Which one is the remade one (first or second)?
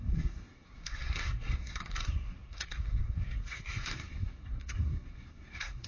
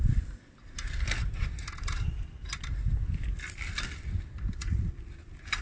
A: first